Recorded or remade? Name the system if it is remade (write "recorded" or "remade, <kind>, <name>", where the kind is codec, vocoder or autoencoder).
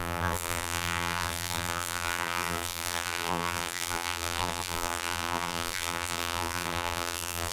remade, vocoder, BigVGAN v2